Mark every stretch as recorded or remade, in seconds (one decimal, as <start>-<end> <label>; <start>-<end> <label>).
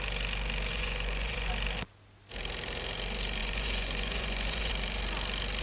0.0-0.7 recorded; 0.7-1.5 remade; 1.5-3.4 recorded; 3.4-4.7 remade; 4.7-5.6 recorded